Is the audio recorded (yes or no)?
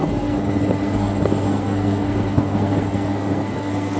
no